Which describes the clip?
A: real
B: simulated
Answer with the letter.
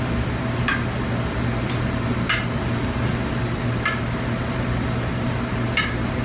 A